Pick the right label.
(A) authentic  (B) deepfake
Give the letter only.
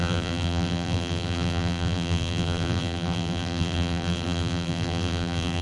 B